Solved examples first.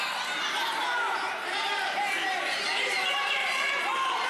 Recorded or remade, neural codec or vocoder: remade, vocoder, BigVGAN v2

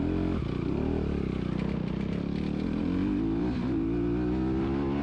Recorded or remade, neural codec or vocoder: recorded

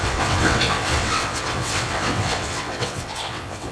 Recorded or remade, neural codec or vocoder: remade, vocoder, WaveNeXt